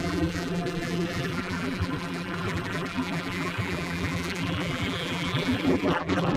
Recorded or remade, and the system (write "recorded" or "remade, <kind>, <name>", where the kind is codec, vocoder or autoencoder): remade, vocoder, BigVGAN v2